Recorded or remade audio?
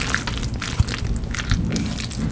recorded